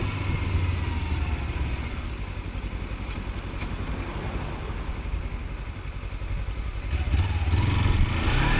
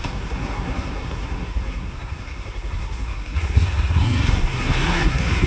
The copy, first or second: second